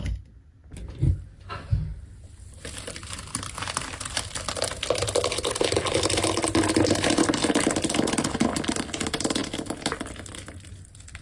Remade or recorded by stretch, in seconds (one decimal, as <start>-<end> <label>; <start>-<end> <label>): 0.0-11.2 recorded